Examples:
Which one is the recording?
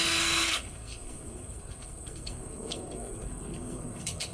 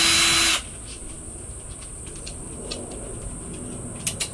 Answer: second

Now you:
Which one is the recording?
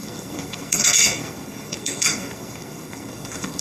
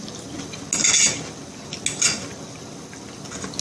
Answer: second